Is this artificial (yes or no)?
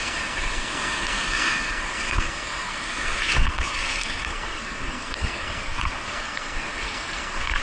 yes